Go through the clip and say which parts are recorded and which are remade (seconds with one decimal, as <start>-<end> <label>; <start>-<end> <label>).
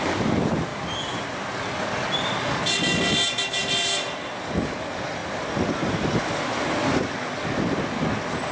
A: 0.0-8.5 recorded